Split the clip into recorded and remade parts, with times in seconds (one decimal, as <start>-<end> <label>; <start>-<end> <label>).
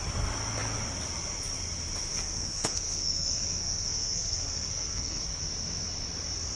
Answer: 0.0-2.1 recorded; 2.1-5.4 remade; 5.4-6.6 recorded